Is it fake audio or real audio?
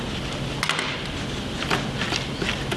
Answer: real